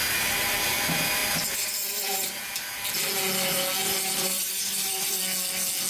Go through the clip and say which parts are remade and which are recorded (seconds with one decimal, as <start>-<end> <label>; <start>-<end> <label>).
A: 0.0-1.2 recorded; 1.2-2.4 remade; 2.4-3.8 recorded; 3.8-5.2 remade; 5.2-5.9 recorded